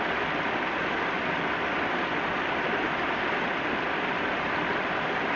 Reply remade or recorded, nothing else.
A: remade